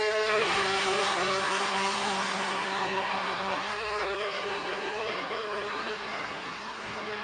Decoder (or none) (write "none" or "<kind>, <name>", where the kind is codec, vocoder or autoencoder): codec, SNAC